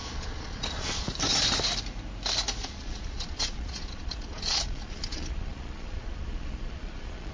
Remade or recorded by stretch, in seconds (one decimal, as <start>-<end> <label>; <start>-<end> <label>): 0.0-1.1 remade; 1.1-2.6 recorded; 2.6-7.3 remade